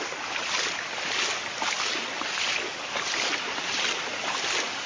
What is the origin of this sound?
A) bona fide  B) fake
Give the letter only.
A